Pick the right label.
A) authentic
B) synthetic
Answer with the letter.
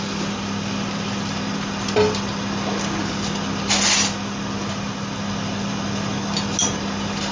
A